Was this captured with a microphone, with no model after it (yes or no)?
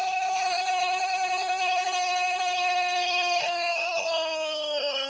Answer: no